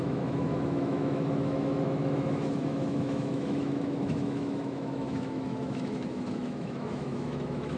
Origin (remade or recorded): remade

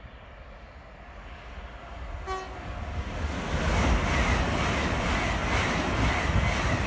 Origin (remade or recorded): recorded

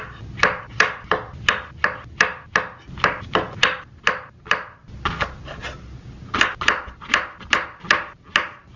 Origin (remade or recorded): recorded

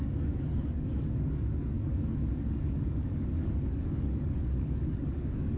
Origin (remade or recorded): remade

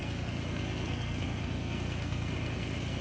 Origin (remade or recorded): remade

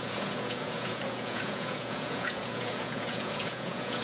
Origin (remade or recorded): remade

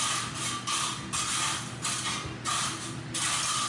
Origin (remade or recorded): recorded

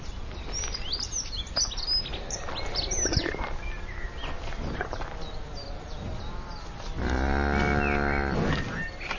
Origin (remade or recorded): recorded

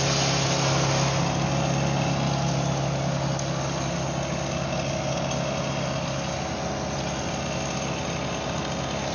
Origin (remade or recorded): recorded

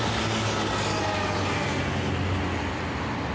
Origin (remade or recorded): recorded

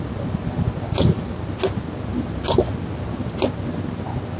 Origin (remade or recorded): recorded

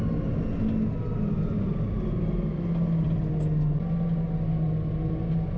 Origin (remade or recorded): recorded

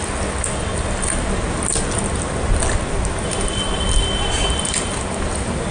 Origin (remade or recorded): recorded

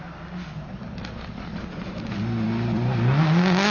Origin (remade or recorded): recorded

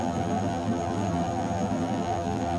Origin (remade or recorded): remade